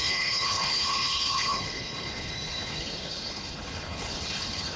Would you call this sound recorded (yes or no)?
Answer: no